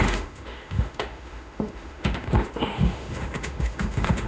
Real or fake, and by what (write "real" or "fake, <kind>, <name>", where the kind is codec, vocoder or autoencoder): fake, autoencoder, DAC-VAE